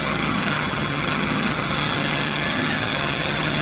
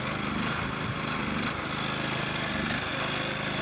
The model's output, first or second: first